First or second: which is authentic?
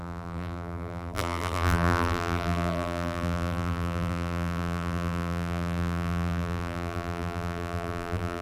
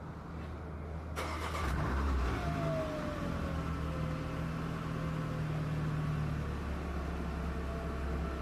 second